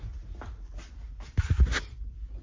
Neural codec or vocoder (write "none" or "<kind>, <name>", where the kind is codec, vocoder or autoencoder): none